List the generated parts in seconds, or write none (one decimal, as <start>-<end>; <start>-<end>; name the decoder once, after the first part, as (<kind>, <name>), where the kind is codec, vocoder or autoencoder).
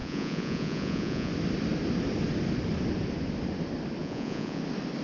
0.0-1.3 (vocoder, Vocos); 4.0-4.6